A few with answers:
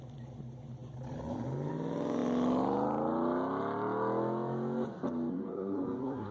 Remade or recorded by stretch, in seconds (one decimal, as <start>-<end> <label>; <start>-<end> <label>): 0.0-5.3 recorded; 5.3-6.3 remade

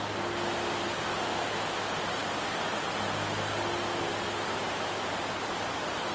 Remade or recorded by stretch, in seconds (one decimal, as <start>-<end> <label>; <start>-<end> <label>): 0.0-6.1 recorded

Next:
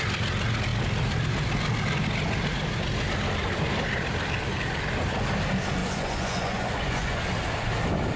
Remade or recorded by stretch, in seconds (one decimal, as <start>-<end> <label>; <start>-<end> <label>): 0.0-5.8 recorded; 5.8-7.2 remade; 7.2-8.2 recorded

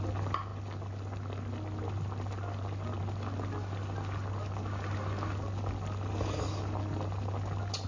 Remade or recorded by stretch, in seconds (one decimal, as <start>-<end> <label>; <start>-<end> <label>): 0.0-7.9 recorded